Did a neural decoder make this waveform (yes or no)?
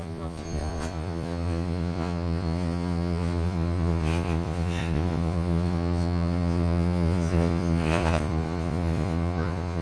yes